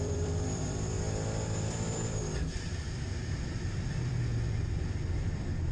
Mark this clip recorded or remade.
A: remade